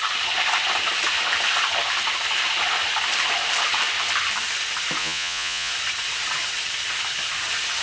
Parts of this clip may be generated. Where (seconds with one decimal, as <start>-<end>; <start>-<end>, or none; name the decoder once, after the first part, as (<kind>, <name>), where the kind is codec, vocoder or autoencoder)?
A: 5.0-5.7 (vocoder, Vocos)

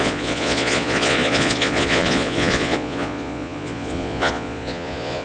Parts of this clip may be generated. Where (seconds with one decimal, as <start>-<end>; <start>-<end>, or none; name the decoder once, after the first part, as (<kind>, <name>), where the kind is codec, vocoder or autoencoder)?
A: 0.0-5.2 (vocoder, Vocos)

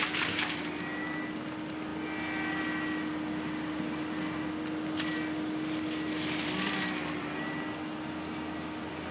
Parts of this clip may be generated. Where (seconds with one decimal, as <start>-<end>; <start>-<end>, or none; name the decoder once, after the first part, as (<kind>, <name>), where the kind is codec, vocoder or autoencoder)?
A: none